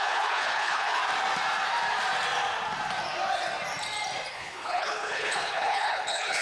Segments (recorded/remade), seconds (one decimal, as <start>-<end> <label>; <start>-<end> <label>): 0.0-1.0 remade; 1.0-4.3 recorded; 4.3-6.4 remade